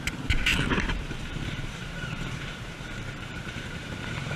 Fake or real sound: fake